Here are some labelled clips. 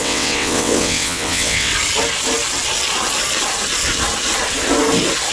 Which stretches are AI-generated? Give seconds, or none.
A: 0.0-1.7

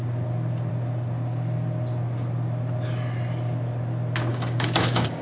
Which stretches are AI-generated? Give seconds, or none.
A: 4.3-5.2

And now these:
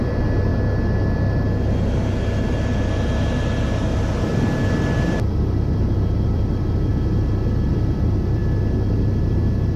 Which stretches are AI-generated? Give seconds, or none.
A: 0.0-0.5; 4.7-6.9; 7.7-8.4; 9.2-9.8

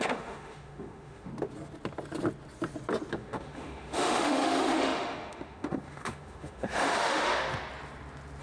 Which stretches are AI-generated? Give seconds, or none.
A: 0.0-1.3; 3.1-7.3